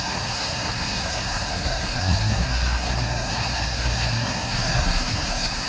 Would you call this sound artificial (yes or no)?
yes